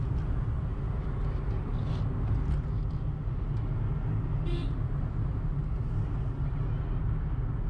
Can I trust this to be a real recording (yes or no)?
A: yes